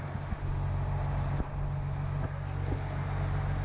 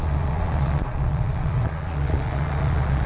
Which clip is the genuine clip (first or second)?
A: first